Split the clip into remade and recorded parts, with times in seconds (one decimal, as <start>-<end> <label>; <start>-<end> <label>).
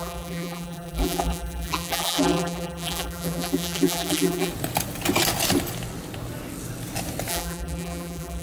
0.0-4.5 remade; 4.5-7.3 recorded; 7.3-8.4 remade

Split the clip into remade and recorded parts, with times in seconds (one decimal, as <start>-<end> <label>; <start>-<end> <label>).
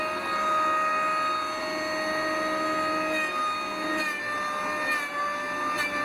0.0-6.0 recorded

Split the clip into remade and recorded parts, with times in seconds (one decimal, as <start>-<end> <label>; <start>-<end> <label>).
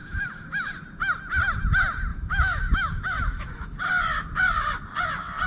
0.0-0.7 remade; 0.7-2.1 recorded; 2.1-3.9 remade; 3.9-5.5 recorded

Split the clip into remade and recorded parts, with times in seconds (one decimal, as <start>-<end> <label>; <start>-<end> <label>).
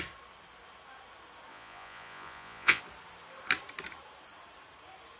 0.0-1.5 recorded; 1.5-2.8 remade; 2.8-5.2 recorded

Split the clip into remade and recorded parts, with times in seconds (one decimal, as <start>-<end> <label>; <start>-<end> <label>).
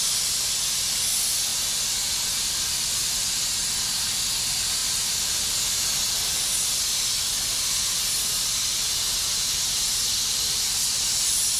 0.0-4.8 recorded; 4.8-5.5 remade; 5.5-11.6 recorded